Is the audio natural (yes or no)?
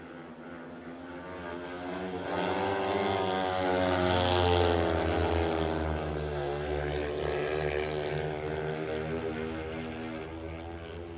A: yes